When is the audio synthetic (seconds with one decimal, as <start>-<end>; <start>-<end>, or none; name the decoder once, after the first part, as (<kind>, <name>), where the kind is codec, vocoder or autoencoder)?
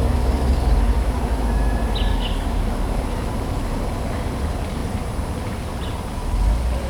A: 0.0-0.7 (codec, DAC); 2.1-3.0